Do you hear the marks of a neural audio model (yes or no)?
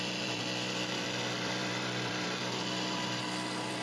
yes